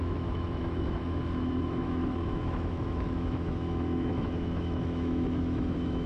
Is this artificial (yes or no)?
yes